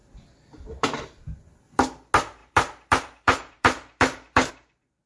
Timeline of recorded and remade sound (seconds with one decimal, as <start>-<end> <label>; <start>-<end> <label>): 0.0-1.0 remade; 1.0-2.4 recorded; 2.4-4.5 remade; 4.5-5.1 recorded